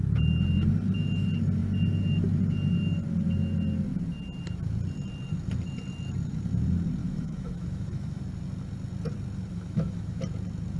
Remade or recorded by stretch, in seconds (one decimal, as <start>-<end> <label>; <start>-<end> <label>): 0.0-7.0 recorded; 7.0-8.2 remade; 8.2-9.5 recorded; 9.5-10.2 remade; 10.2-10.8 recorded